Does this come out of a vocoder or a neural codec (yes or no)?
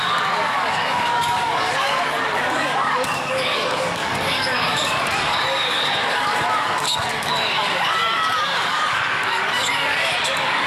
yes